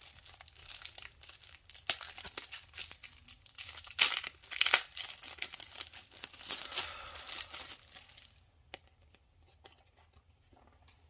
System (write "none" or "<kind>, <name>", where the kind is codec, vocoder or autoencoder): none